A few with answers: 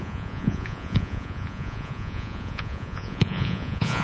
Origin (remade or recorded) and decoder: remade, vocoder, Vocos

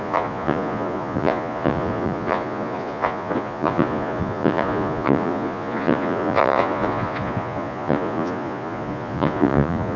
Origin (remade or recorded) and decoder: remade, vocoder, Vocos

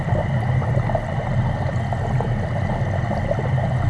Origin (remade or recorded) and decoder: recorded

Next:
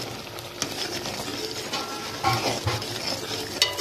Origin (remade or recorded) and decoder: recorded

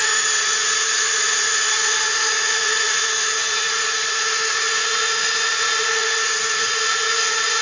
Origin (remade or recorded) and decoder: remade, vocoder, Vocos